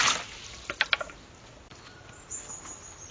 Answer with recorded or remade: recorded